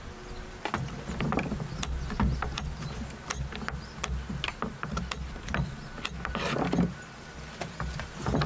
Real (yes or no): yes